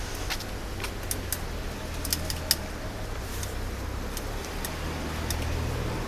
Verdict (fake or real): real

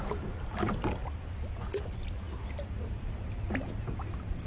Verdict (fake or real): real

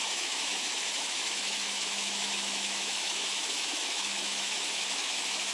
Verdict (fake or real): fake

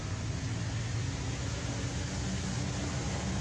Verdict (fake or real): real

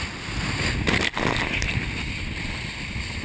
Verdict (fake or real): real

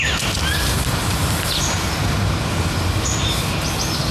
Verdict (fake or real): real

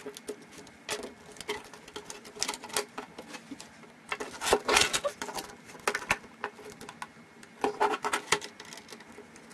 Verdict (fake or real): real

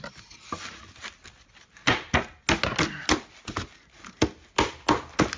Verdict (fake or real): real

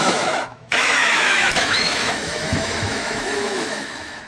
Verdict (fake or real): fake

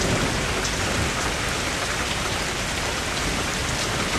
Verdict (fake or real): real